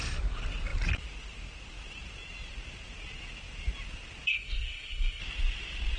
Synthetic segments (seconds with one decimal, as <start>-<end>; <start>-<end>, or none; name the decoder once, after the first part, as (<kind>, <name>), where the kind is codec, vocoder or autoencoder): 4.3-5.2 (codec, SNAC)